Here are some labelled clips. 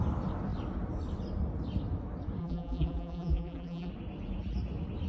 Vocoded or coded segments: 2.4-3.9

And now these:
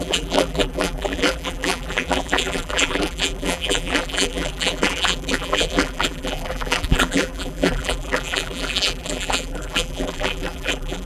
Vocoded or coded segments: 0.0-11.1

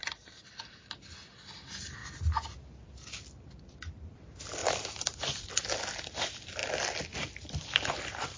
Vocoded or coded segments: 4.6-5.4

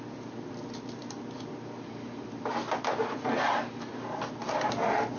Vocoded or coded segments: 1.0-2.5

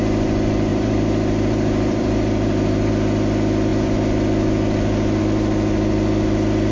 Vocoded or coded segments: 0.7-2.9

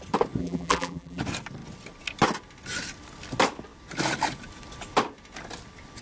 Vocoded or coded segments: 0.4-1.2

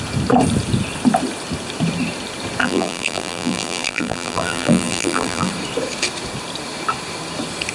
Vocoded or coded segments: 2.6-5.5

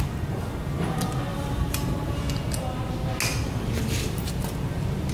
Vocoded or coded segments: 1.3-2.2; 3.3-4.2